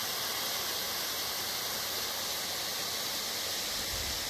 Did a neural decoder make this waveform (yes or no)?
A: no